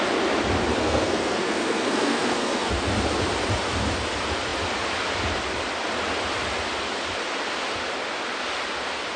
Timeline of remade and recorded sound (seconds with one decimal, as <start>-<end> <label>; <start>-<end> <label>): 0.0-0.8 recorded; 0.8-2.7 remade; 2.7-9.2 recorded